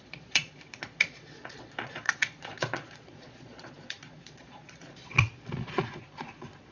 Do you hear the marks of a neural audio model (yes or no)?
yes